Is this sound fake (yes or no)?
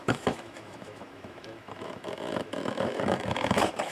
yes